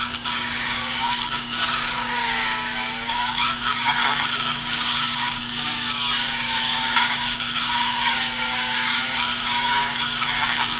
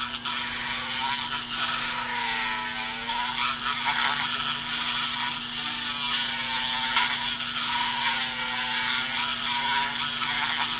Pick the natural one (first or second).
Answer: second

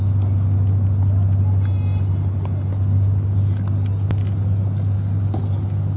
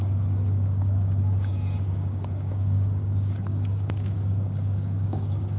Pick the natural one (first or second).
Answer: first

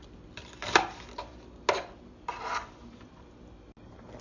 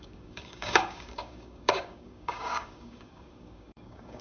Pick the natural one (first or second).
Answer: first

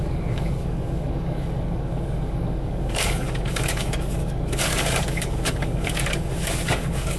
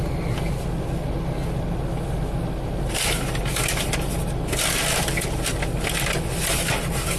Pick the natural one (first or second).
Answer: second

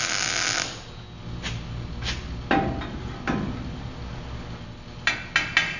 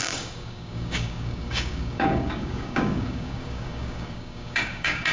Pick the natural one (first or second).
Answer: first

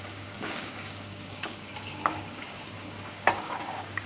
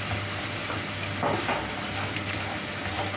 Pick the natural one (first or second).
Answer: second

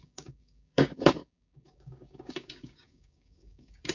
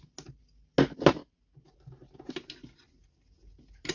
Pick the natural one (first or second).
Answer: second